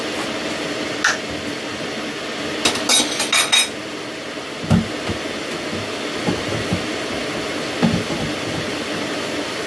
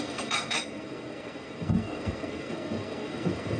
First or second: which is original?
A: first